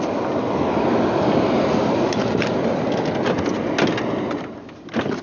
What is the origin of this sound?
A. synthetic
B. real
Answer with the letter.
B